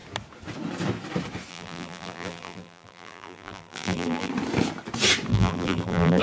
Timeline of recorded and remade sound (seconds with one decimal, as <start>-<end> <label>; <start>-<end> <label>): 0.0-1.5 recorded; 1.5-4.3 remade; 4.3-5.3 recorded; 5.3-6.2 remade